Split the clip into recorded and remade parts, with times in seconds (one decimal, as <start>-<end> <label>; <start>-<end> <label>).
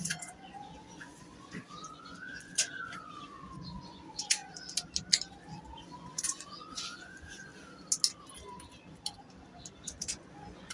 0.0-4.4 remade; 4.4-5.8 recorded; 5.8-7.5 remade; 7.5-9.8 recorded; 9.8-10.7 remade